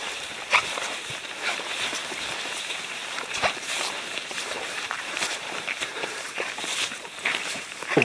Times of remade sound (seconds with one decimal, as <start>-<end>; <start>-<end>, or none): 0.0-2.0; 2.6-8.0